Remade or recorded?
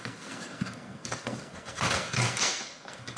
remade